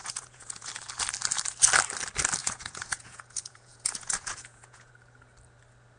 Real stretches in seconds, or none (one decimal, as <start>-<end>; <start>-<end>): 0.7-2.4; 4.9-6.0